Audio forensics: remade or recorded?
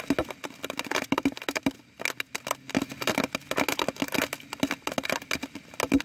recorded